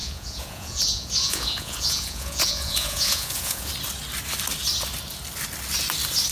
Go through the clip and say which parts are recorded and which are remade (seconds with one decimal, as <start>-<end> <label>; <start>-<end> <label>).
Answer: 0.0-3.7 remade; 3.7-6.3 recorded